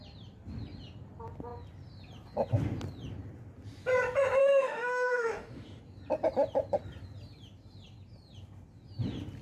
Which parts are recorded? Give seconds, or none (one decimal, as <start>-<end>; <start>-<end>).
0.0-4.4; 5.8-9.4